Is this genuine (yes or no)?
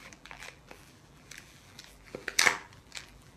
no